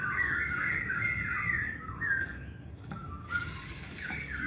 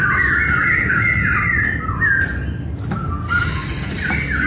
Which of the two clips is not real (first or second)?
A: first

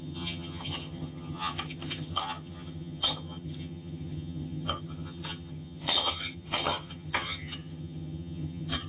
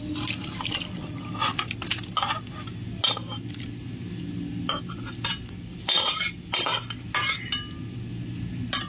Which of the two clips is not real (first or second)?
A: first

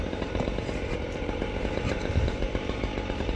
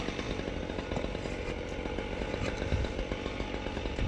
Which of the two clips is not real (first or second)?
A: first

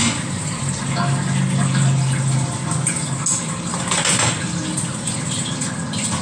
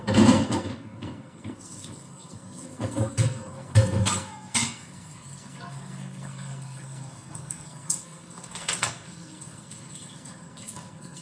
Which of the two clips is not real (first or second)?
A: second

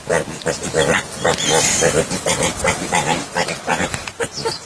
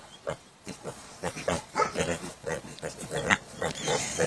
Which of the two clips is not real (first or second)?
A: second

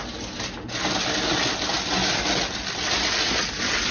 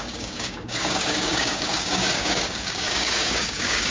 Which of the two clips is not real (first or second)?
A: second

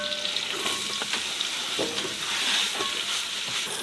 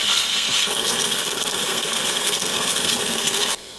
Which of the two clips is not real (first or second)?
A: second